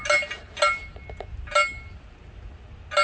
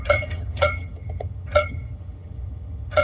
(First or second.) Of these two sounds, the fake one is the second